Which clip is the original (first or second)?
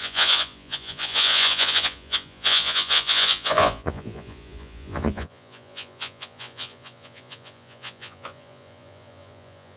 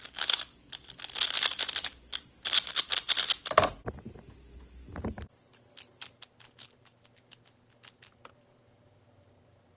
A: second